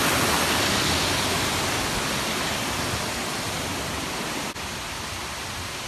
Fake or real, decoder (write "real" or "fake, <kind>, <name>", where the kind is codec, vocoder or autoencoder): real